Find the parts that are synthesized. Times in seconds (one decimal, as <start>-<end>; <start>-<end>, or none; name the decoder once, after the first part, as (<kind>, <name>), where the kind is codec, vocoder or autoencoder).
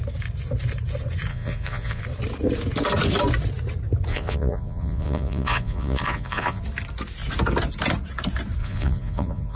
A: 1.3-2.0 (vocoder, Vocos); 4.1-6.6; 8.6-9.6